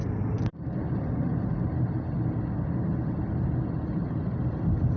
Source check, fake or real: real